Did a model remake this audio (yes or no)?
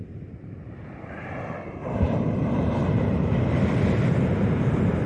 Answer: yes